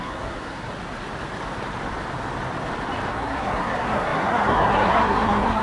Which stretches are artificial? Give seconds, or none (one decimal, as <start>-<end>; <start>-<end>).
0.0-0.7; 3.1-5.6